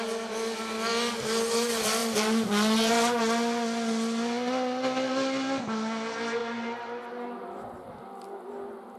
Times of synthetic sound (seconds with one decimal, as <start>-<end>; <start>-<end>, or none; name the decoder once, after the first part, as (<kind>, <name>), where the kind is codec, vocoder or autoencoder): none